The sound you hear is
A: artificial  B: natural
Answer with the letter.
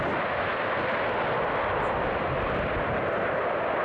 B